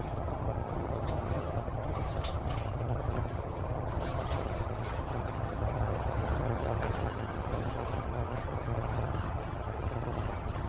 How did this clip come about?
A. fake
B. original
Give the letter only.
A